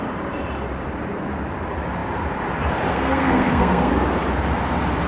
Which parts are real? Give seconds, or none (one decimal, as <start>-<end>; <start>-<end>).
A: 0.0-2.9; 3.9-5.1